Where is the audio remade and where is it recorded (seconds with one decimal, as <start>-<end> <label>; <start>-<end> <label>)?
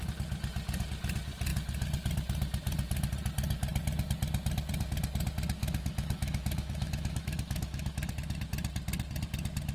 0.0-5.6 recorded; 5.6-8.1 remade; 8.1-9.7 recorded